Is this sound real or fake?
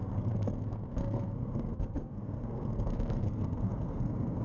fake